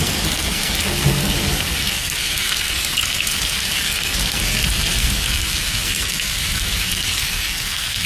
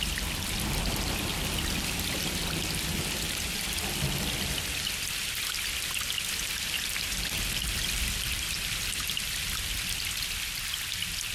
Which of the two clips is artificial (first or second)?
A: first